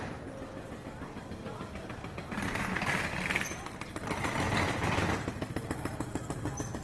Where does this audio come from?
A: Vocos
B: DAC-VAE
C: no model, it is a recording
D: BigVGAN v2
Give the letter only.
C